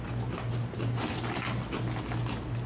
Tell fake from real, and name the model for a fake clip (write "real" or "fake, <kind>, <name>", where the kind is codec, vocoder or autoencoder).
real